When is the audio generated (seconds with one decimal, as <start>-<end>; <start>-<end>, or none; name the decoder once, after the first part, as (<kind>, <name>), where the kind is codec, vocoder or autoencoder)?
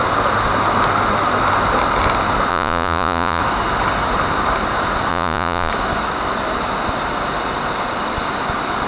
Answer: 2.5-3.4 (vocoder, Vocos); 5.1-5.7